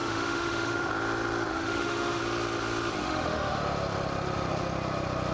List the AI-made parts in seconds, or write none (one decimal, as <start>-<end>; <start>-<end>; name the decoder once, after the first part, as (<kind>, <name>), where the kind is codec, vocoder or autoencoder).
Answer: 0.0-0.9 (autoencoder, DAC-VAE); 1.5-2.2; 3.0-3.6